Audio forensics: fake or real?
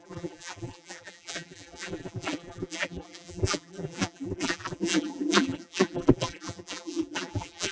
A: fake